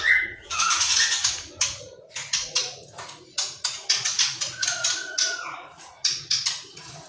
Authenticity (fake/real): fake